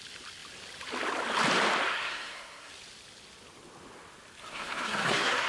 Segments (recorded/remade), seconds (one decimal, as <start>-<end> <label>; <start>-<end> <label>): 0.0-1.9 recorded; 1.9-2.7 remade; 2.7-4.4 recorded; 4.4-5.5 remade